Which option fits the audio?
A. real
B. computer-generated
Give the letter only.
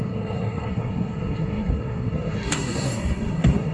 B